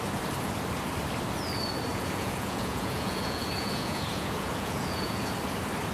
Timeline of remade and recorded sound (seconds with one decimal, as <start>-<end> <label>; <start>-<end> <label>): 0.0-1.9 recorded; 1.9-5.4 remade; 5.4-5.9 recorded